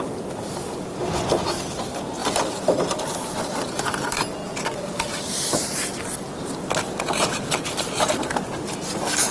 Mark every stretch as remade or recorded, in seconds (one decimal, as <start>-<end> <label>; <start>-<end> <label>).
0.0-9.3 recorded